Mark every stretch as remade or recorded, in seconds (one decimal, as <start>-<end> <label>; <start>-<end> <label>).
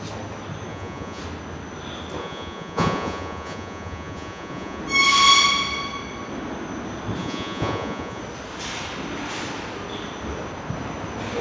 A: 0.0-0.7 recorded; 0.7-1.2 remade; 1.2-2.2 recorded; 2.2-4.8 remade; 4.8-7.2 recorded; 7.2-8.2 remade; 8.2-11.4 recorded